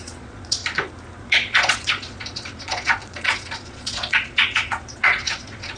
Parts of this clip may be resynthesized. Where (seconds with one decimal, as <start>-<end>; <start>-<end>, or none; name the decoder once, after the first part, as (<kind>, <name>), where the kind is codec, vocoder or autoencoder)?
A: 0.0-0.6 (vocoder, Vocos); 1.2-5.8